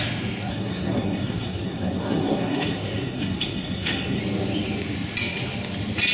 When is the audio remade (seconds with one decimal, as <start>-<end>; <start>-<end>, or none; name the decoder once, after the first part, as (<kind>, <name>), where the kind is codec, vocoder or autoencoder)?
0.5-4.2 (codec, SNAC)